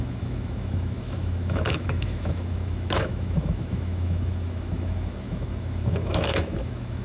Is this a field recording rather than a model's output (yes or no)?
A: no